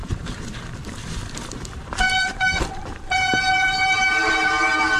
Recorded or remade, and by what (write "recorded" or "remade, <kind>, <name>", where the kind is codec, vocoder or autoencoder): remade, vocoder, BigVGAN v2